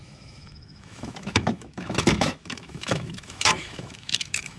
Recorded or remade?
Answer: remade